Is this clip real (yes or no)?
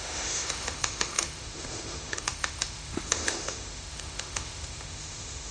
no